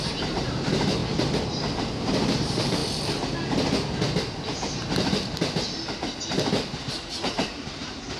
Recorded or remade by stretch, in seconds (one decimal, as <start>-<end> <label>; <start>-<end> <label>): 0.0-1.0 remade; 1.0-1.6 recorded; 1.6-2.8 remade; 2.8-6.9 recorded; 6.9-8.2 remade